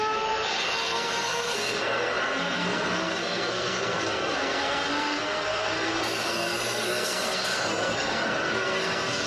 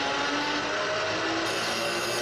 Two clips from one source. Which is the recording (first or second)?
second